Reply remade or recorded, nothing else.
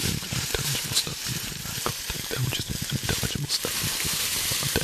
remade